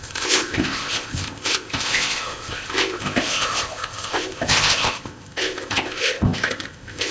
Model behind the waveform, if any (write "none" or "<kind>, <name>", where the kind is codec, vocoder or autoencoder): codec, ZipCodec